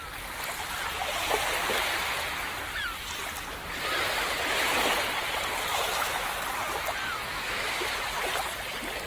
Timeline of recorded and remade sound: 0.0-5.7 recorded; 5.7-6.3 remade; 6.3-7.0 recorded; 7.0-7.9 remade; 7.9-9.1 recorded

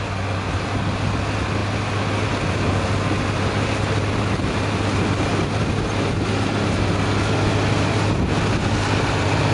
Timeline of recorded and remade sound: 0.0-9.5 recorded